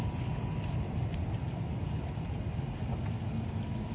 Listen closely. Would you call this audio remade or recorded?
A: recorded